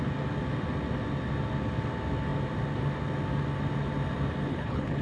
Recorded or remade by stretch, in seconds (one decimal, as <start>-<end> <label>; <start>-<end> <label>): 0.0-4.5 recorded; 4.5-5.0 remade